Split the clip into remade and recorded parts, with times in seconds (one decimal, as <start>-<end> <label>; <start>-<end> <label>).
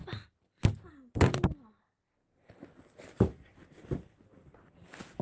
0.0-0.9 remade; 0.9-5.2 recorded